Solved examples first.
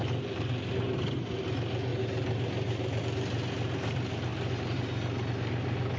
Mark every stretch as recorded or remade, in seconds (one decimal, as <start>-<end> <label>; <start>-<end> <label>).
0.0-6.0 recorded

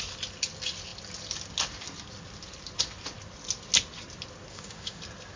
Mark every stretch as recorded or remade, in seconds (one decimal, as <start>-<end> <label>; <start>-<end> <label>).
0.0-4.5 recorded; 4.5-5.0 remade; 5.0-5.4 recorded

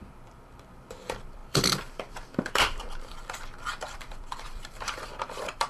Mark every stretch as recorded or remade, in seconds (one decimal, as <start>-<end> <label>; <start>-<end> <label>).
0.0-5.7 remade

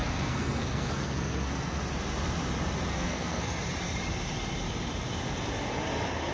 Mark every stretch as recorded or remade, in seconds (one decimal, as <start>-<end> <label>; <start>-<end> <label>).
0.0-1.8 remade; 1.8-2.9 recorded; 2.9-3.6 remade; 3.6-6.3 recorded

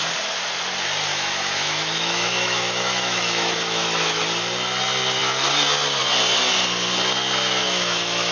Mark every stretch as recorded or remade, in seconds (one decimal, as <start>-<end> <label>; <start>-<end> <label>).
0.0-1.1 recorded; 1.1-4.2 remade; 4.2-7.6 recorded; 7.6-8.3 remade

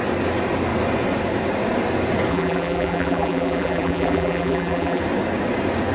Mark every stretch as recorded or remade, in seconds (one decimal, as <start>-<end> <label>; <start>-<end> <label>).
0.0-2.3 recorded; 2.3-5.0 remade; 5.0-5.9 recorded

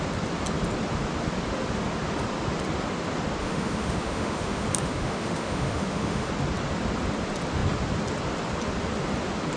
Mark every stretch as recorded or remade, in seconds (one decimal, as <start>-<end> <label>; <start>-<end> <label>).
0.0-3.4 recorded; 3.4-6.3 remade; 6.3-9.6 recorded